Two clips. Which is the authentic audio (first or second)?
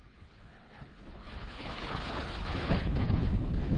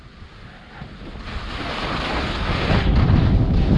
second